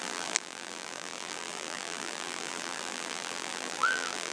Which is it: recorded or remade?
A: remade